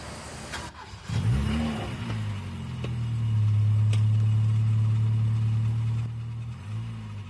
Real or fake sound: real